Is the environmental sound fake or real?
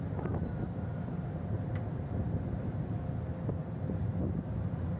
real